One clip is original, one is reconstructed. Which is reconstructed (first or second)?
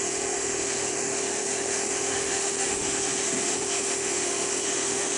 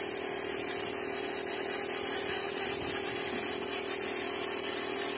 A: first